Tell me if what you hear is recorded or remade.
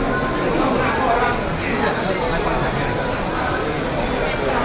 recorded